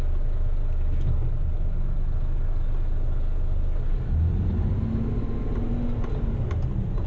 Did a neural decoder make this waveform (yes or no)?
no